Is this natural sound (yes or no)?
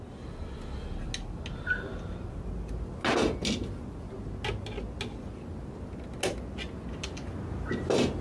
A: yes